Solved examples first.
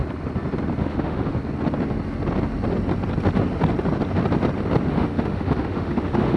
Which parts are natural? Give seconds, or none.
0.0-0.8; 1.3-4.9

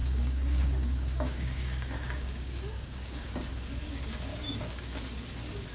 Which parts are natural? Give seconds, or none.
3.3-4.3; 5.0-5.7

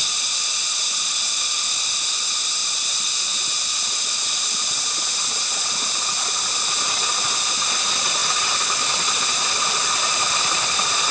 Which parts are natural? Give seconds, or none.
0.0-11.1

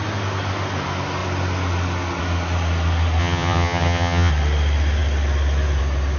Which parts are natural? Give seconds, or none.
0.0-3.2; 4.3-6.2

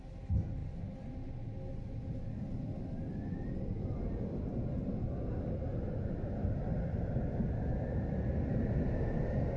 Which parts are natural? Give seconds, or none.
0.0-9.6

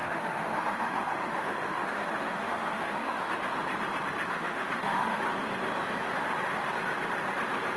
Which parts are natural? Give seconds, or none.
3.2-4.3; 5.2-7.8